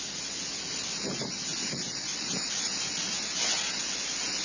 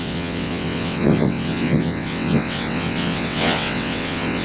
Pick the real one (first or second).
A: first